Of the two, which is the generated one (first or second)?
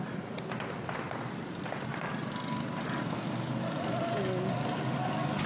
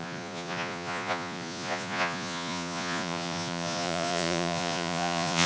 second